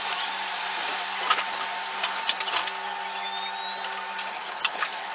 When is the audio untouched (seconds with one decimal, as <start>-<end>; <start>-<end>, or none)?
0.0-4.3